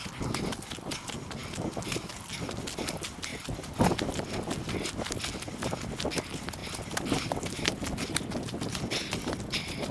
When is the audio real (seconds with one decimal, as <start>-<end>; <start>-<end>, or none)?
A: 0.0-1.4; 2.1-9.9